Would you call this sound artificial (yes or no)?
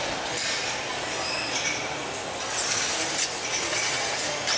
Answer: no